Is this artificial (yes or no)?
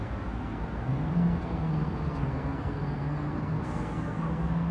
yes